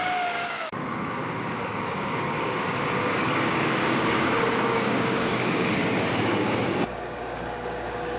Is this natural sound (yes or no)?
no